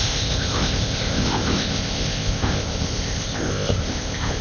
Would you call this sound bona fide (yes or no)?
no